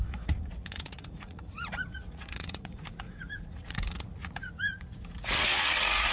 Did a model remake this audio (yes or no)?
yes